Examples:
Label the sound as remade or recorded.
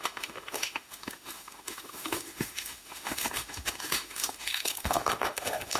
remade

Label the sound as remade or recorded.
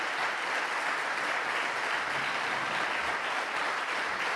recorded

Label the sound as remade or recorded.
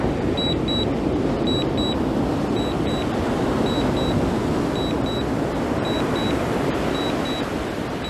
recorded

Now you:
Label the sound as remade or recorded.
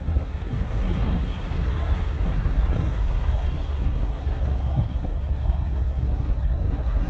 remade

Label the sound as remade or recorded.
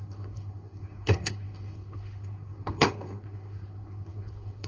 remade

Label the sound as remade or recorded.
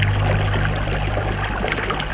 recorded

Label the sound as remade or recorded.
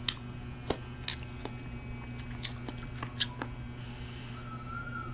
recorded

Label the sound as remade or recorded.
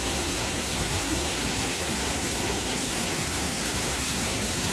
remade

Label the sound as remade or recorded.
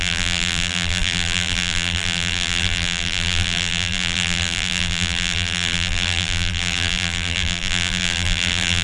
remade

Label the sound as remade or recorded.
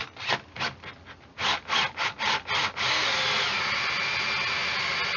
recorded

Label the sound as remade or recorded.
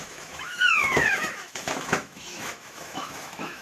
remade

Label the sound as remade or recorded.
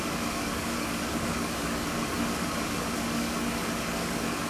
remade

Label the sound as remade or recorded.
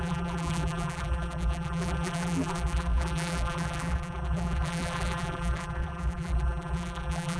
remade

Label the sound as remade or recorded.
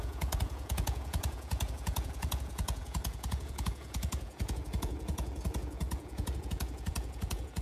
remade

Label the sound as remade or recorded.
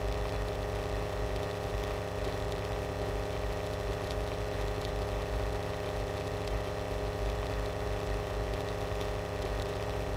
remade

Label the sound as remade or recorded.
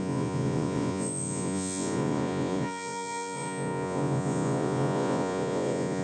remade